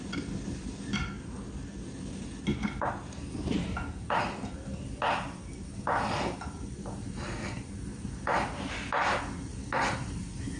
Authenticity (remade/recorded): recorded